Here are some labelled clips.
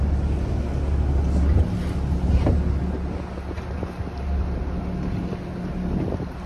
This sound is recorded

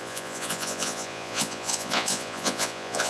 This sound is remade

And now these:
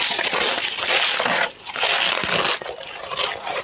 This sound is recorded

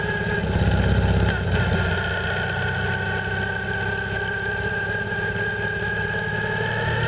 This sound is recorded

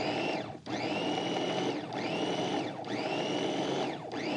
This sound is recorded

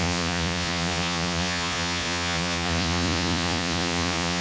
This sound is remade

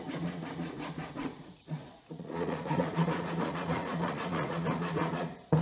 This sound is remade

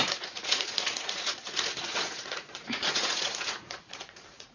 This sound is remade